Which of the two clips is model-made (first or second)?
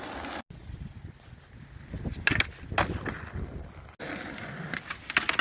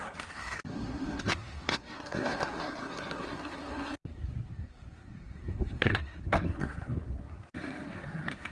second